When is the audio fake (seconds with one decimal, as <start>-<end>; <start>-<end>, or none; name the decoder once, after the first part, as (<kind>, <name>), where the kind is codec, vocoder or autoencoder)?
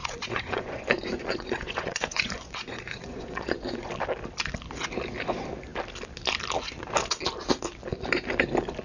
0.0-3.9 (vocoder, Vocos)